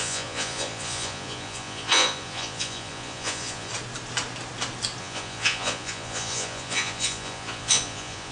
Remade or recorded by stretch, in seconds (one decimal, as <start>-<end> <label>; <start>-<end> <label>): 0.0-3.7 remade; 3.7-5.0 recorded; 5.0-8.3 remade